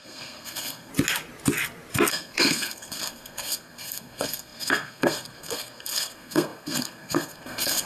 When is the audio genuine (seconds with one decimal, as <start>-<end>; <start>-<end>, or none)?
0.9-2.1